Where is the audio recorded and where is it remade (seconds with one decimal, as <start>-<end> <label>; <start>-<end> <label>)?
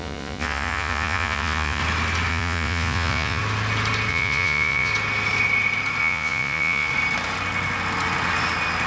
0.0-1.8 remade; 1.8-2.3 recorded; 2.3-3.4 remade; 3.4-4.1 recorded; 4.1-4.9 remade; 4.9-6.0 recorded; 6.0-6.9 remade; 6.9-8.9 recorded